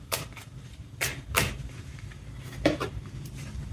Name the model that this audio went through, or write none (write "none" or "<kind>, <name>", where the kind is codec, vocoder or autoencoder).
vocoder, BigVGAN v2